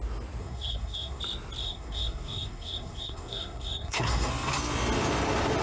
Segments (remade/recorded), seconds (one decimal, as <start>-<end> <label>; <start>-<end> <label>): 0.0-0.4 recorded; 0.4-1.2 remade; 1.2-1.6 recorded; 1.6-4.3 remade; 4.3-5.6 recorded